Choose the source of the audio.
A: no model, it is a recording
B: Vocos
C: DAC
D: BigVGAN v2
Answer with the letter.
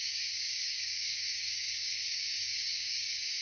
C